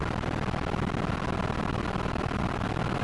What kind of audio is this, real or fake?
real